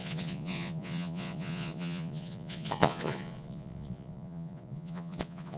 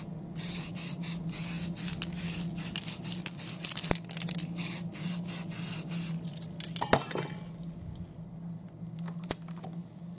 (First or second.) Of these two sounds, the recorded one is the second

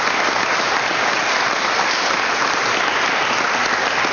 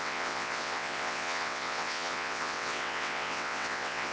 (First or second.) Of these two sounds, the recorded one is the first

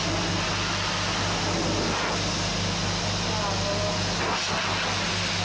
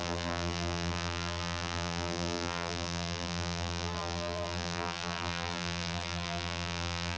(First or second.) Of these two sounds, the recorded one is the first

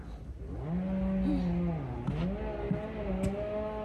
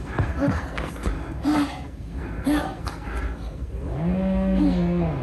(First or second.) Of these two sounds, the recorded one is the first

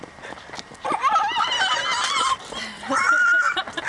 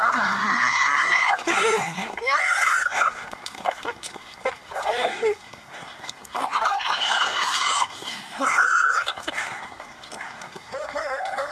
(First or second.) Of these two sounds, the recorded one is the first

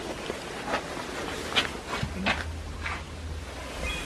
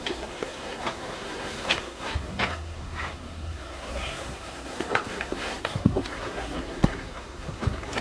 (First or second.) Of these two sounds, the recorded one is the first